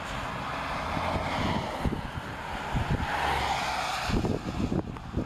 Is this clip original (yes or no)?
yes